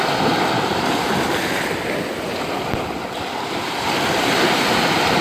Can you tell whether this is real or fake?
real